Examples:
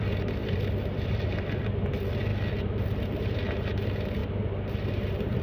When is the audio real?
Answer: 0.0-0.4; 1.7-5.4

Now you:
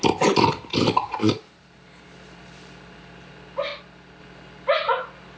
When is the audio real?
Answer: 0.0-1.2; 3.3-5.4